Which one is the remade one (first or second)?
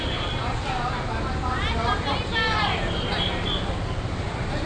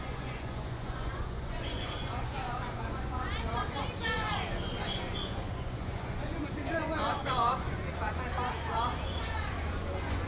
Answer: second